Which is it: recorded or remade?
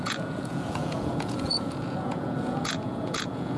remade